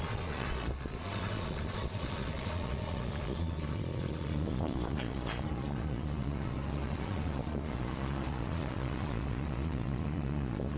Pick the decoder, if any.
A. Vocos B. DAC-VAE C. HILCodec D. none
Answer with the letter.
A